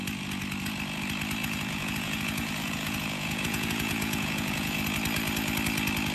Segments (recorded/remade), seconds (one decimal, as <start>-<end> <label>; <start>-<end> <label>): 0.0-1.4 recorded; 1.4-4.8 remade; 4.8-6.1 recorded